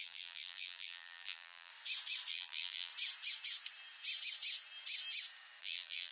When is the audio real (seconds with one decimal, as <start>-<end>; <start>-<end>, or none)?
1.7-2.3; 2.9-5.6